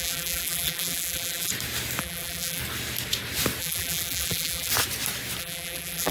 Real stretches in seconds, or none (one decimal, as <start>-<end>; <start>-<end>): 1.5-2.0; 2.6-3.6; 4.7-5.4